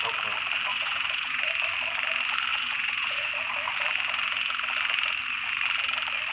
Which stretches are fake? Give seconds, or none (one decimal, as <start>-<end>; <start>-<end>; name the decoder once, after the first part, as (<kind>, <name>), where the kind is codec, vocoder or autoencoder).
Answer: 0.7-1.5 (vocoder, Vocos); 2.5-3.3